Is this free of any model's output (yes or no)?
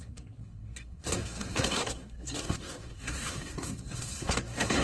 no